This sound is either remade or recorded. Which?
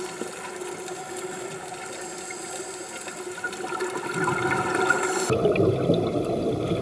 recorded